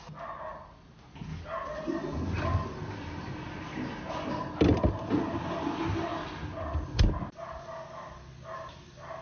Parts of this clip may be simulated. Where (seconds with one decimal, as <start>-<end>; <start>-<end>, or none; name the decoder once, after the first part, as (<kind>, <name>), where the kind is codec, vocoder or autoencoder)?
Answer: none